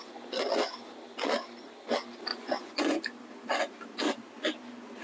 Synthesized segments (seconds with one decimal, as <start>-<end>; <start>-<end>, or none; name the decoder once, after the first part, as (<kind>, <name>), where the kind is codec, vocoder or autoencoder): 2.3-3.0 (vocoder, Vocos)